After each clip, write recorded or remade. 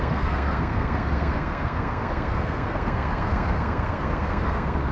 remade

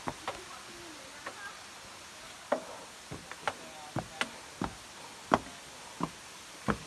recorded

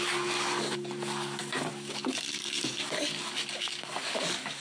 remade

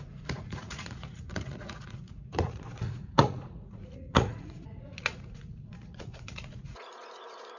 remade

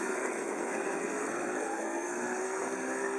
remade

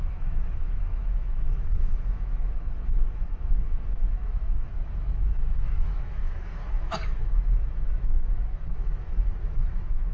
remade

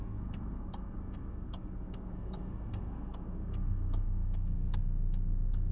remade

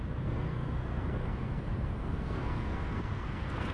remade